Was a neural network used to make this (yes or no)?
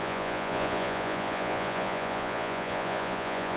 yes